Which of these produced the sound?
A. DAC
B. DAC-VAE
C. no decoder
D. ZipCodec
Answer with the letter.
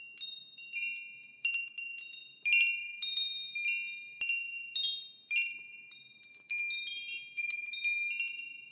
C